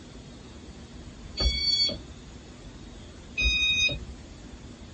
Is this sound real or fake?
fake